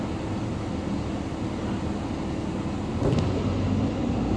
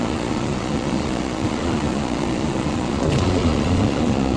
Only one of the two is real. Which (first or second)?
first